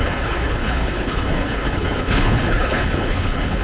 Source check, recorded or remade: remade